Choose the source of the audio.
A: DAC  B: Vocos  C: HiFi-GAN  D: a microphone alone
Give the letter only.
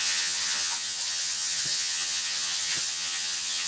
C